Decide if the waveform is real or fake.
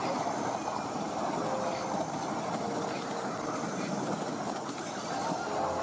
real